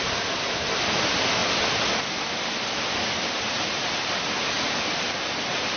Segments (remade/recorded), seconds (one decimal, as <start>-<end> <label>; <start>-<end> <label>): 0.0-5.8 recorded